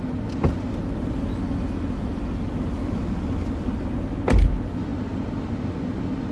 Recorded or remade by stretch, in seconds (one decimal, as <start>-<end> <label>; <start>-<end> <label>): 0.0-6.3 recorded